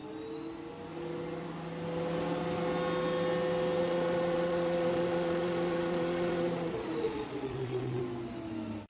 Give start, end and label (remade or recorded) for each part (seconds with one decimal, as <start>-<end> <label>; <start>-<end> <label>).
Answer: 0.0-3.8 recorded; 3.8-8.0 remade; 8.0-8.9 recorded